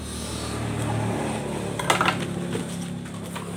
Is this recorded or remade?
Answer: recorded